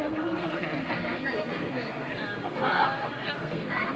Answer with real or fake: fake